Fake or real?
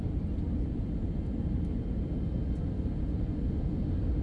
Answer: real